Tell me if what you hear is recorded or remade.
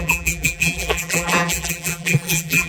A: remade